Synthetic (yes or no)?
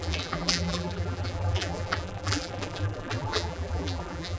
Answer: yes